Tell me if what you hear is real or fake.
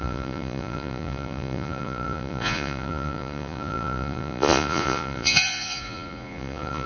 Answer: fake